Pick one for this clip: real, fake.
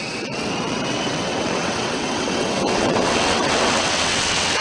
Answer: fake